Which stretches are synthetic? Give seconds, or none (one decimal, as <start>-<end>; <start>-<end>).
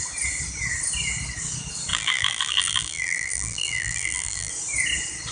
1.9-4.5